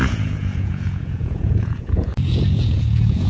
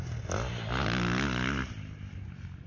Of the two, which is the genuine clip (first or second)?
second